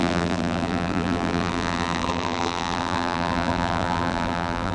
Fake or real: fake